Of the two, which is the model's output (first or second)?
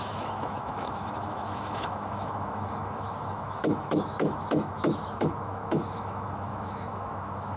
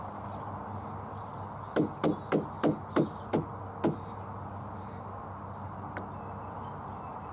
first